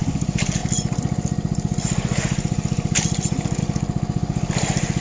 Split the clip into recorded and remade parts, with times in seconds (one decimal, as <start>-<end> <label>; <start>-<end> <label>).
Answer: 0.0-5.0 recorded